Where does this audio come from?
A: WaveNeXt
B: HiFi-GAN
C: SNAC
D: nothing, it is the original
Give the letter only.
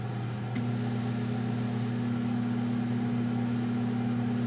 D